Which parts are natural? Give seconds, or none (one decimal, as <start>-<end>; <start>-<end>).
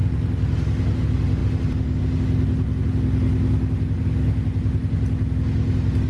0.0-6.1